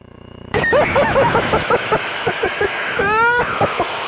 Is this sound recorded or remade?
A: remade